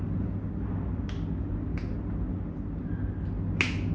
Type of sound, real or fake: real